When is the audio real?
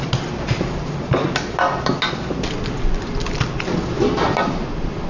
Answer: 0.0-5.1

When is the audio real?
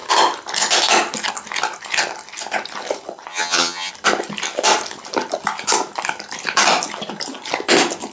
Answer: 0.0-3.3; 3.9-8.1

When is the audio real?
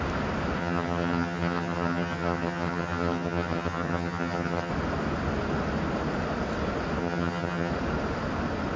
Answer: 0.0-0.6; 4.7-7.0; 7.7-8.8